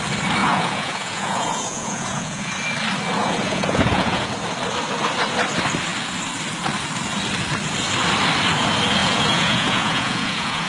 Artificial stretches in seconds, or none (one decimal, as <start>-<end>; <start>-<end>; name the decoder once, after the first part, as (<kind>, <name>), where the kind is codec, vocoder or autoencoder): 0.4-2.5 (vocoder, Vocos); 3.2-4.3; 9.0-10.7